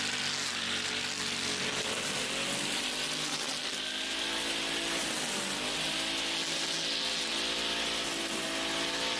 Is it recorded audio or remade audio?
recorded